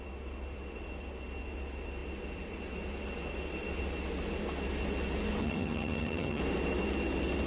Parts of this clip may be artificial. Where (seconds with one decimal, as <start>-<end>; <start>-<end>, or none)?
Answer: 5.4-6.4